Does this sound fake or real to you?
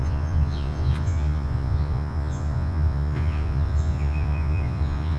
fake